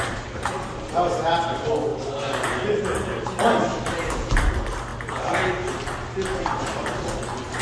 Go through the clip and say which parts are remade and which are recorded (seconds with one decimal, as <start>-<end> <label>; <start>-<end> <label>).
0.0-7.6 recorded